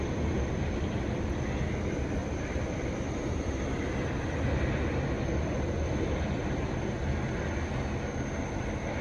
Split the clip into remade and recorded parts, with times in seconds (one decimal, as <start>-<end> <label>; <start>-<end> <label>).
0.0-2.2 recorded; 2.2-3.4 remade; 3.4-9.0 recorded